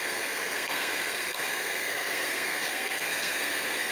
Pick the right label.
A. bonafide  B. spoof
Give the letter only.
B